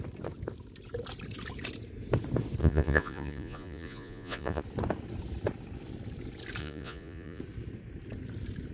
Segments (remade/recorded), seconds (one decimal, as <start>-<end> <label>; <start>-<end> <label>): 0.0-2.6 recorded; 2.6-4.6 remade; 4.6-6.6 recorded; 6.6-7.4 remade; 7.4-8.7 recorded